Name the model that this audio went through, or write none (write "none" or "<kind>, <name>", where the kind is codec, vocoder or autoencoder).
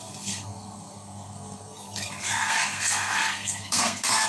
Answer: codec, SNAC